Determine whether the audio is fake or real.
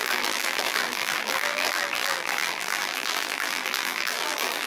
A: fake